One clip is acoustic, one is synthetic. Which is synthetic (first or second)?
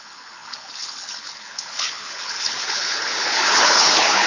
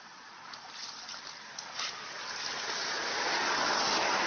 first